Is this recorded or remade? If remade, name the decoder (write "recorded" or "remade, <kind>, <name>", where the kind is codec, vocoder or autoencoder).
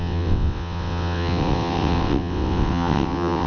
remade, vocoder, WaveNeXt